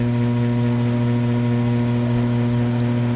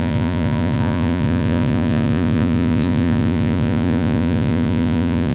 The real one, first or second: first